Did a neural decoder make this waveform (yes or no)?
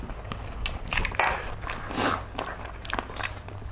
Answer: no